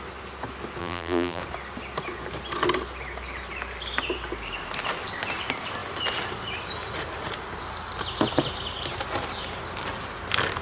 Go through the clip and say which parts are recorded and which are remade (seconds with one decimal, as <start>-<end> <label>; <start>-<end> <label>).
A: 0.0-0.8 recorded; 0.8-1.4 remade; 1.4-10.6 recorded